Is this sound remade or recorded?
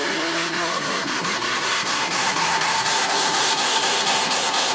remade